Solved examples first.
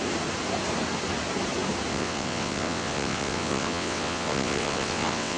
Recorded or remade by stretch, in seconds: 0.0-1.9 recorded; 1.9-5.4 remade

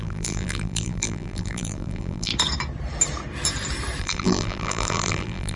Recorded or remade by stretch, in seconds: 0.0-2.3 remade; 2.3-4.0 recorded; 4.0-5.6 remade

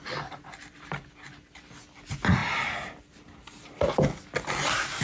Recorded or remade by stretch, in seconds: 0.0-5.0 recorded

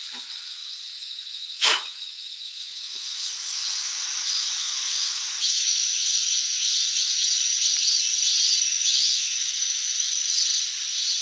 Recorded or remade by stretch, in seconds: 0.0-7.5 remade; 7.5-8.7 recorded; 8.7-10.1 remade; 10.1-11.2 recorded

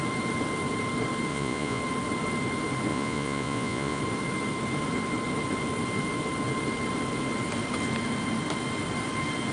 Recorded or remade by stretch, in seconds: 0.0-1.3 recorded; 1.3-1.8 remade; 1.8-2.9 recorded; 2.9-4.0 remade; 4.0-9.5 recorded

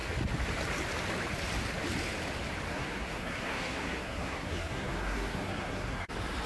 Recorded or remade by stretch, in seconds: 0.0-2.7 recorded; 2.7-6.1 remade; 6.1-6.5 recorded